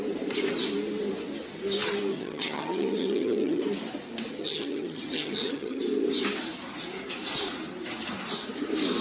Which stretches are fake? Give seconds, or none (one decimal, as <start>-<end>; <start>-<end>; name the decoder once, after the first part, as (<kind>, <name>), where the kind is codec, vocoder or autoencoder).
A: 2.1-3.6 (vocoder, HiFi-GAN); 4.4-5.8